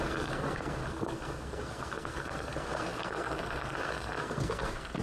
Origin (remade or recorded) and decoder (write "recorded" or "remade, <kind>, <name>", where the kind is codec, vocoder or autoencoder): remade, codec, SNAC